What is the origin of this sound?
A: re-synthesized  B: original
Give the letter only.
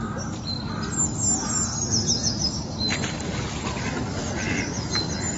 B